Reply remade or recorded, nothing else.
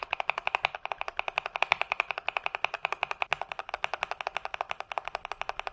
recorded